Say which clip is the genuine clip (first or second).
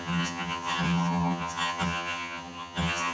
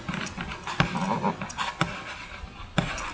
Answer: second